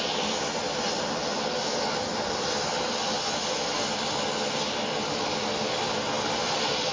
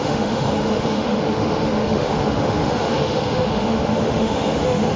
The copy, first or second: second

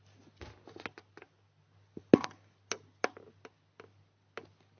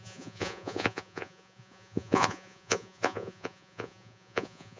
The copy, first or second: second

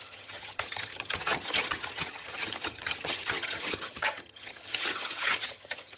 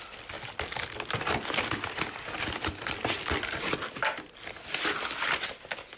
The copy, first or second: first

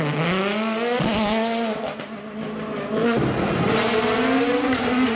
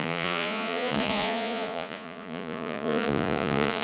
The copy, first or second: second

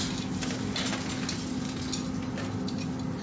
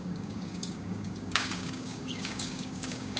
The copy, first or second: second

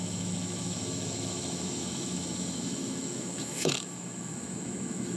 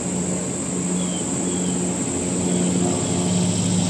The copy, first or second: first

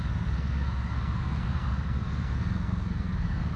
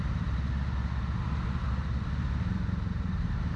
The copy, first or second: first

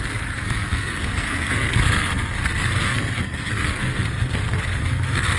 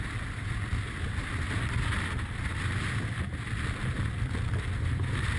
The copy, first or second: first